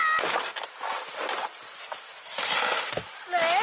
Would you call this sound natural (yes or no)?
yes